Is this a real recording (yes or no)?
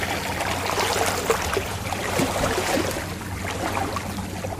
yes